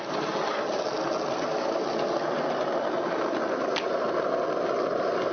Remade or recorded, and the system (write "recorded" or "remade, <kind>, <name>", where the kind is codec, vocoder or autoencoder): recorded